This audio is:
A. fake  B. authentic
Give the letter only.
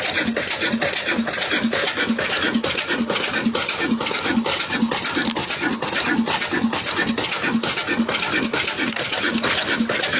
B